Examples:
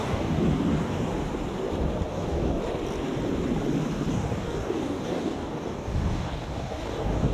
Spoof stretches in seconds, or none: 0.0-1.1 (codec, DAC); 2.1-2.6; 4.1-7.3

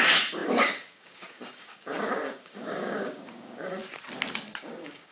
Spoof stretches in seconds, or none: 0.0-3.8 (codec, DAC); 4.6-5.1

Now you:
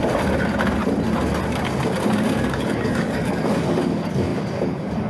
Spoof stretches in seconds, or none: 2.1-5.1 (codec, DAC)

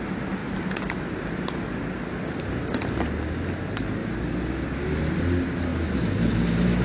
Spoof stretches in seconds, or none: none

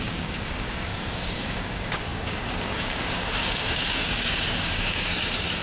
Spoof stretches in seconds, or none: 0.0-5.6 (codec, DAC)

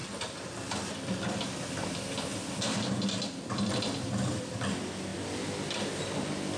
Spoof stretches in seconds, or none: none

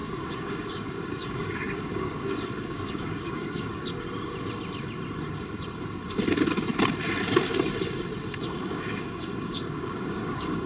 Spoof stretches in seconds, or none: 0.0-3.8 (codec, DAC); 8.4-10.7

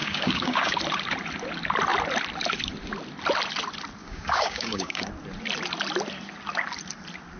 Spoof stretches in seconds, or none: 0.0-0.8 (codec, DAC); 4.0-5.1